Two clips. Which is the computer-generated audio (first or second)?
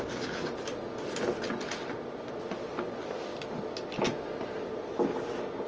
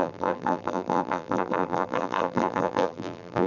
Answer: second